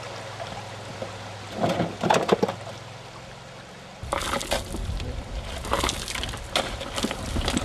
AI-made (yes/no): no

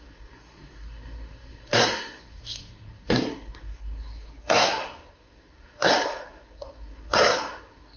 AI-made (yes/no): yes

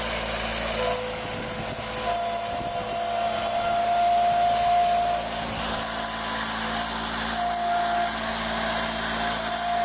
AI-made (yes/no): no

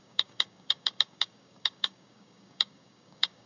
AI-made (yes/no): yes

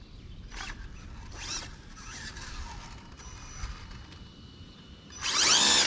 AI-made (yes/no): no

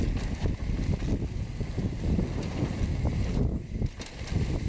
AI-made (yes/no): no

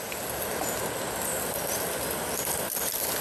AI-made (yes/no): no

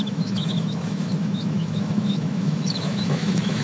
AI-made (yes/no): yes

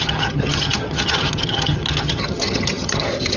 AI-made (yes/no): yes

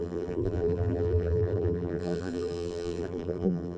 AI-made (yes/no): yes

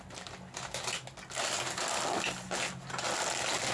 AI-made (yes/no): no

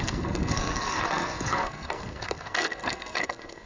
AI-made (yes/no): yes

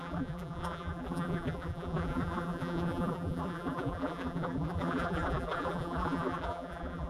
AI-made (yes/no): yes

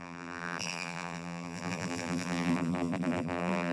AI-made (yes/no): yes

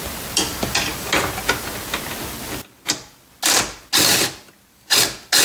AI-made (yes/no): no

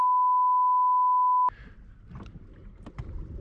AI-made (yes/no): no